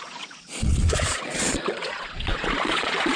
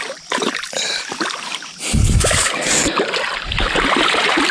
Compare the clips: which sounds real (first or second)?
second